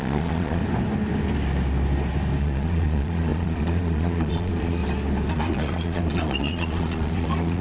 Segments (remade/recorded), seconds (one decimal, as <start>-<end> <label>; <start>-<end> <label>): 0.0-0.6 remade; 0.6-2.4 recorded; 2.4-4.8 remade; 4.8-5.3 recorded; 5.3-7.6 remade